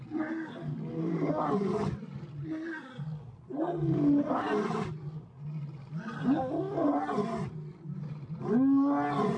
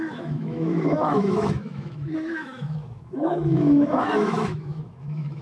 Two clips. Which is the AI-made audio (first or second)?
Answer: second